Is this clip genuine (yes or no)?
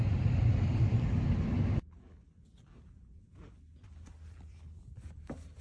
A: yes